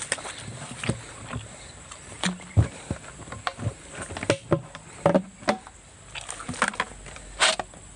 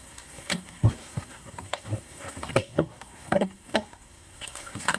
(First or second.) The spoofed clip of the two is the second